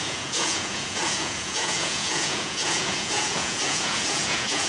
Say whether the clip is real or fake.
fake